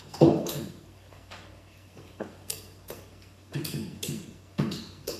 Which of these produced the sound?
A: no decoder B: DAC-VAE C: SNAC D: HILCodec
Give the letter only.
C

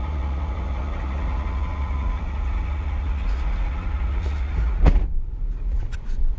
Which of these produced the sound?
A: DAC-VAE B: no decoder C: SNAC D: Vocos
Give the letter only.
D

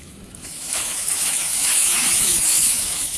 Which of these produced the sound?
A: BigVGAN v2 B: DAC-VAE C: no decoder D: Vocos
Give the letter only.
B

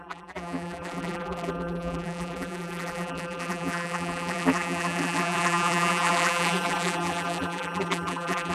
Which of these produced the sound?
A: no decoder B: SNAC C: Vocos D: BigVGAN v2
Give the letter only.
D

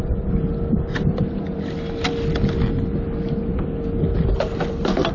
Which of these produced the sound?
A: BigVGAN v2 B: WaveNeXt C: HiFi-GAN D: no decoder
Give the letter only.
D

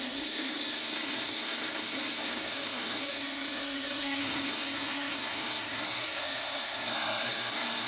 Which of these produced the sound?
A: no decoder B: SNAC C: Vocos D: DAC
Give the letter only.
B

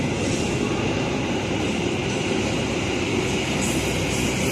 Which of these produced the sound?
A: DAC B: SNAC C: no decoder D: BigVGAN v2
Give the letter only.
C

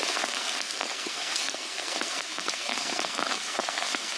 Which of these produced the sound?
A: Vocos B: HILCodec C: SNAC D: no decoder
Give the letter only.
C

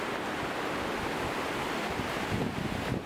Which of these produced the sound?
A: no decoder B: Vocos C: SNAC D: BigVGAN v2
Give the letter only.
A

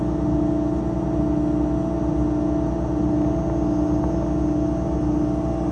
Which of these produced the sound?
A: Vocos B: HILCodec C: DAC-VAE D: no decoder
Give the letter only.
D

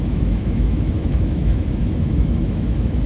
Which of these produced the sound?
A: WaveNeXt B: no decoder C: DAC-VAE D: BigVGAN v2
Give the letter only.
C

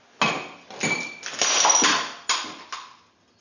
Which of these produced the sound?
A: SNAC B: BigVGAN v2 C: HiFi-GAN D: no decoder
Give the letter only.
D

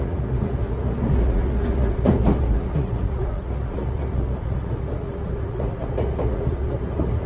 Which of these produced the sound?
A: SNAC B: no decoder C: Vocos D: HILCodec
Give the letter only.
C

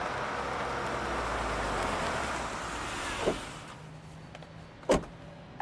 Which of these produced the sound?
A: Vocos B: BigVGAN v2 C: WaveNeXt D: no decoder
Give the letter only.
D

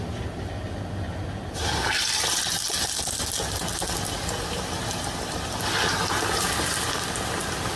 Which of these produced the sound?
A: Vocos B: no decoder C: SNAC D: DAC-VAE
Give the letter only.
B